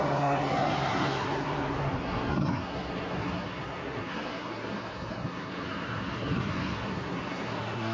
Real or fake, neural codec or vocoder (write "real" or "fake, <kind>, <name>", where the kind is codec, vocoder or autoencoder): fake, codec, SNAC